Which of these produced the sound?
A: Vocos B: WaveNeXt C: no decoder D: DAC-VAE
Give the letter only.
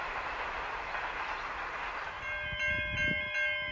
C